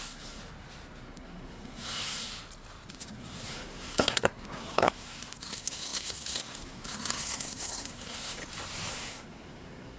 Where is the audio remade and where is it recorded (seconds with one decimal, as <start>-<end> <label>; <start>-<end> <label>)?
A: 0.0-0.4 remade; 0.4-1.0 recorded; 1.0-2.3 remade; 2.3-2.9 recorded; 2.9-8.4 remade; 8.4-8.9 recorded; 8.9-10.0 remade